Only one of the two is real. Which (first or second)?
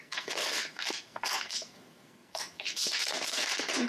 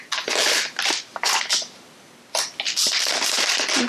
second